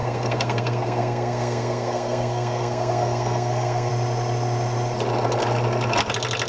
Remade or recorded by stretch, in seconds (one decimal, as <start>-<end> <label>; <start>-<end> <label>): 0.0-3.9 remade; 3.9-6.5 recorded